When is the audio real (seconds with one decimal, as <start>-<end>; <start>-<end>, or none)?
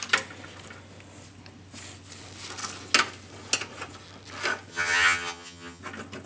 0.0-4.7; 5.8-6.3